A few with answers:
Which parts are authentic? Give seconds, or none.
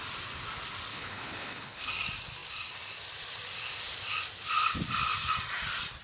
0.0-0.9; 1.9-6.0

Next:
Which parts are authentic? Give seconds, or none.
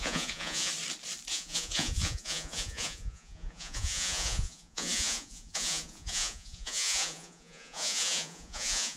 0.7-1.3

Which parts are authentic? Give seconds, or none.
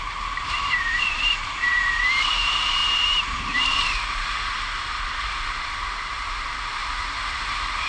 6.8-7.4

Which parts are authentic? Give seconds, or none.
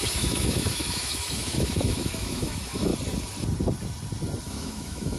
2.9-4.4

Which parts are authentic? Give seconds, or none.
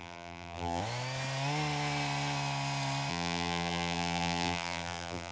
0.8-3.1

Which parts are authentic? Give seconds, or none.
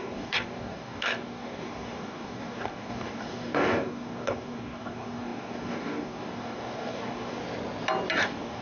7.4-8.2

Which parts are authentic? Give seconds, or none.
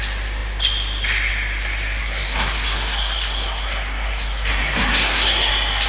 0.0-2.0; 5.5-5.9